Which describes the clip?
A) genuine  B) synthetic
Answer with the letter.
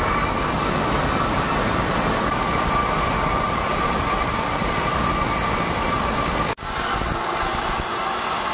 A